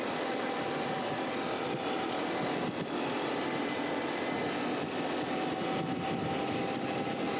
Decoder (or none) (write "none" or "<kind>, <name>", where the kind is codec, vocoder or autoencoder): none